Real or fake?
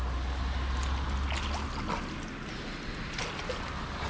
real